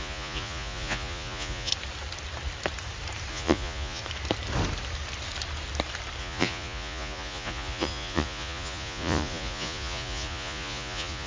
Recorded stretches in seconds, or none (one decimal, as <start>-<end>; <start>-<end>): 1.7-3.3; 4.0-6.2